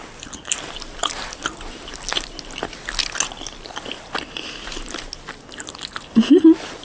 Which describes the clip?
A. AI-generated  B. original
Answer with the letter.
B